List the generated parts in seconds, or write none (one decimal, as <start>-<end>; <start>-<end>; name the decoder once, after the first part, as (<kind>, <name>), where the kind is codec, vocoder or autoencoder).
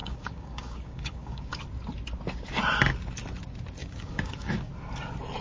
0.0-1.6 (codec, DAC); 3.8-4.7